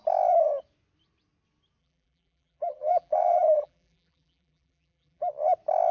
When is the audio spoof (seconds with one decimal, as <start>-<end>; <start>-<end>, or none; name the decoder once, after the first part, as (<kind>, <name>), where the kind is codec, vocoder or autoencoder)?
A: 1.8-5.3 (vocoder, BigVGAN v2)